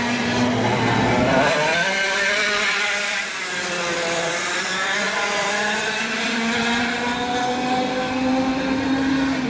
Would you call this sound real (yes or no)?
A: no